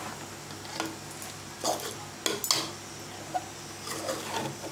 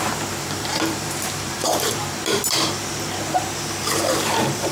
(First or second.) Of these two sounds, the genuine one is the first